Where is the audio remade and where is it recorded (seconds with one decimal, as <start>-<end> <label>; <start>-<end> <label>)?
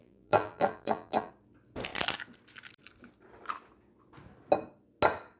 0.0-1.3 remade; 1.3-5.4 recorded